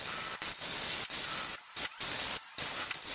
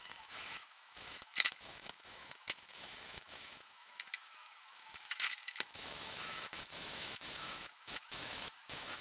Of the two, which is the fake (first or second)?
second